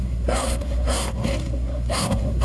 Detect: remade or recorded remade